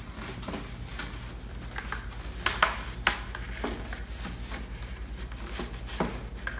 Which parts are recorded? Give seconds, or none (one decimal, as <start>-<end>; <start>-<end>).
0.0-6.6